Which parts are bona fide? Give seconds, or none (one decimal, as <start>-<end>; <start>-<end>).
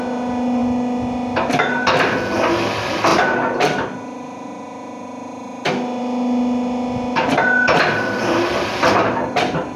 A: 0.0-9.8